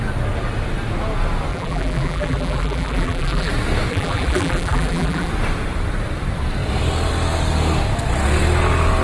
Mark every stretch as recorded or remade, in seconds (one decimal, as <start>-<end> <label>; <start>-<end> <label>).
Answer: 0.0-1.5 recorded; 1.5-3.5 remade; 3.5-3.9 recorded; 3.9-5.3 remade; 5.3-9.0 recorded